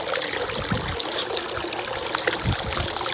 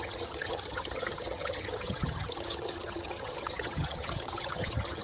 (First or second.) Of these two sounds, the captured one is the first